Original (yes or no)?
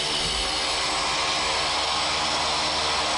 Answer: yes